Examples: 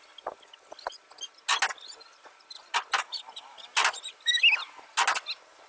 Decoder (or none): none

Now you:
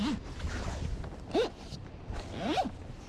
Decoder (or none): none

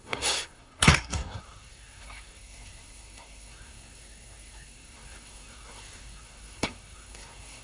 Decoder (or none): codec, SNAC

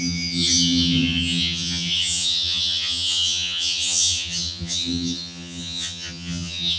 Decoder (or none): vocoder, HiFi-GAN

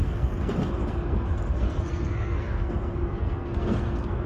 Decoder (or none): codec, SNAC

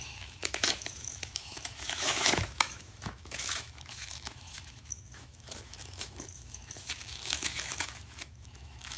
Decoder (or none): autoencoder, DAC-VAE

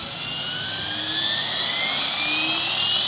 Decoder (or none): none